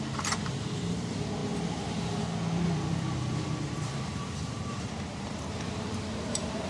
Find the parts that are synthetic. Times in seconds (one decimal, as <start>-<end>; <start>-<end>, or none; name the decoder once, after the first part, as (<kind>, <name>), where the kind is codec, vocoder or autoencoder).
0.0-1.4 (vocoder, BigVGAN v2); 3.6-6.7